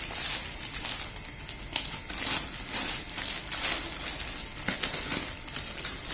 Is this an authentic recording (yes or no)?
yes